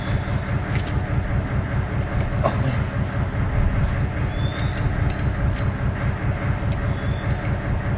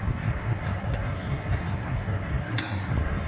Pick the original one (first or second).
first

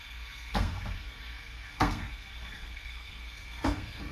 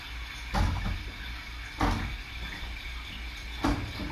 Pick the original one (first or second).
second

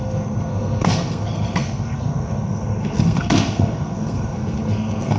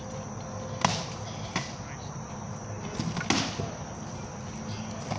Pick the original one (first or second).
second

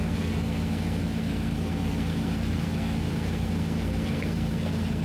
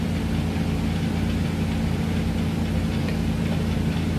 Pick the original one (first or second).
second